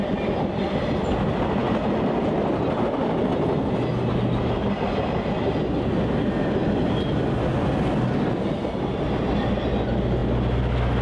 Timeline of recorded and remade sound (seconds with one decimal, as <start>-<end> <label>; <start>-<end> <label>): 0.0-11.0 recorded

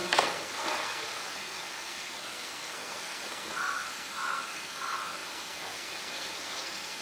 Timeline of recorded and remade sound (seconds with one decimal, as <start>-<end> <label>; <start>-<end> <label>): 0.0-7.0 remade

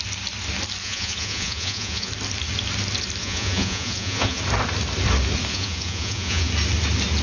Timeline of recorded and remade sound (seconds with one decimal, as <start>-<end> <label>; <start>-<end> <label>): 0.0-0.8 recorded; 0.8-2.1 remade; 2.1-3.2 recorded; 3.2-4.4 remade; 4.4-5.5 recorded; 5.5-6.5 remade; 6.5-7.2 recorded

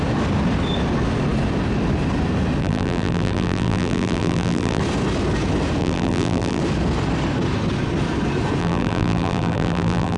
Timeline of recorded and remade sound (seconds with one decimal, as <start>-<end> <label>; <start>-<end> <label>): 0.0-2.6 recorded; 2.6-4.8 remade; 4.8-5.8 recorded; 5.8-6.6 remade; 6.6-8.6 recorded; 8.6-10.2 remade

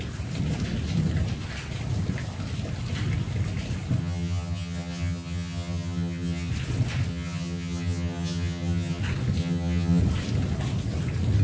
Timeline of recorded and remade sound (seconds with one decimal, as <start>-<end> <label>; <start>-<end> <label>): 0.0-4.0 recorded; 4.0-6.5 remade; 6.5-7.1 recorded; 7.1-9.0 remade; 9.0-9.4 recorded; 9.4-10.0 remade; 10.0-11.4 recorded